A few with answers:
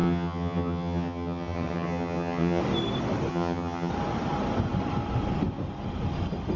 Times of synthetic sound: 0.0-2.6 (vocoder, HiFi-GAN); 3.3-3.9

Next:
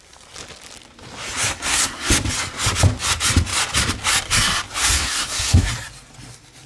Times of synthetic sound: 1.5-2.1 (codec, SNAC); 4.8-5.7

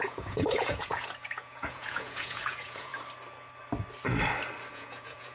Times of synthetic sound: 0.0-2.9 (vocoder, Vocos); 4.7-5.3

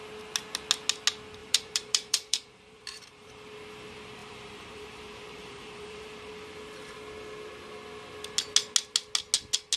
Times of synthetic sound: 1.4-3.3 (vocoder, BigVGAN v2); 4.2-6.3

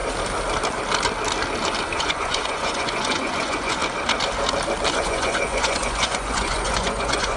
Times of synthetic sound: 2.0-3.8 (vocoder, Vocos); 4.9-7.4

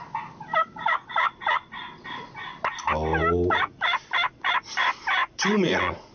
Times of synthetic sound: 5.2-6.1 (vocoder, Vocos)

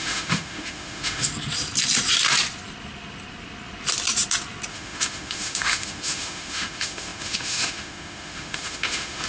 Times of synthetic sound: 0.0-1.3 (autoencoder, DAC-VAE); 4.7-9.3